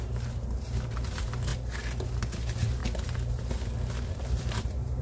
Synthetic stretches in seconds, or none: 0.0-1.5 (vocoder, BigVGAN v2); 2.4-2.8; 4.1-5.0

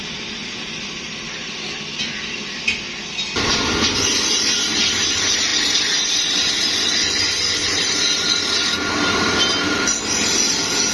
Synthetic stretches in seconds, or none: none

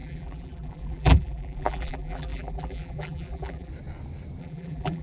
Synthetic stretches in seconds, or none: 0.0-3.7 (vocoder, BigVGAN v2); 4.4-5.0

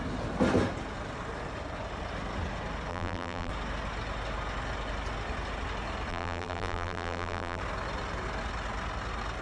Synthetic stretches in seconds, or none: 2.9-3.5 (vocoder, BigVGAN v2); 6.1-7.6

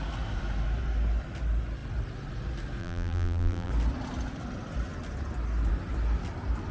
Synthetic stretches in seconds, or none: 2.8-3.7 (vocoder, BigVGAN v2)